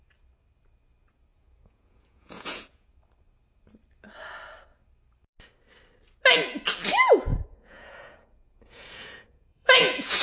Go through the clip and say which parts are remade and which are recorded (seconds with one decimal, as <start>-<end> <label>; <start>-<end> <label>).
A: 0.0-1.3 recorded; 1.3-2.9 remade; 2.9-7.3 recorded; 7.3-10.2 remade